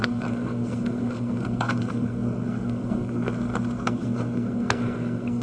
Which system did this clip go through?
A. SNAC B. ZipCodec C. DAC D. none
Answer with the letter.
A